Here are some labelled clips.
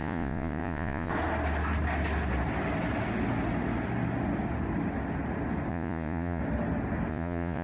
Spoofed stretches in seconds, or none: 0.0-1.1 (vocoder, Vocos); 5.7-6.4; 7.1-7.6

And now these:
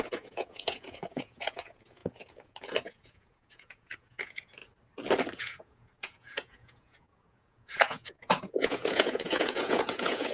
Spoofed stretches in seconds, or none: 0.0-4.6 (vocoder, Vocos); 5.4-10.3

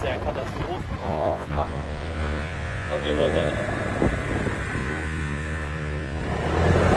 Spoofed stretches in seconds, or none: 1.0-3.5 (vocoder, Vocos); 4.8-6.2

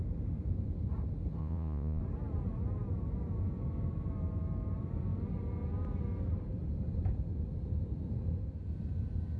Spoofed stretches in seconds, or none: 1.4-2.0 (vocoder, Vocos)

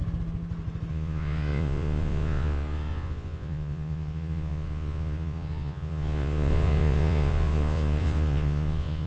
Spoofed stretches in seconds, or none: 0.9-9.1 (vocoder, Vocos)

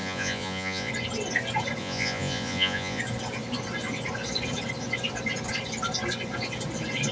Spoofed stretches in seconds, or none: 0.0-0.9 (vocoder, Vocos); 1.8-3.0

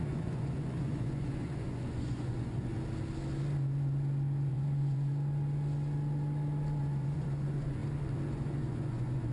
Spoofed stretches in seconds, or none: 0.0-2.7 (vocoder, Vocos); 4.5-5.1; 6.8-7.8; 8.3-9.3